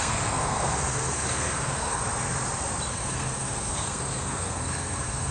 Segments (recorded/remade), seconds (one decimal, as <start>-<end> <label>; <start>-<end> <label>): 0.0-2.0 remade; 2.0-2.9 recorded; 2.9-5.3 remade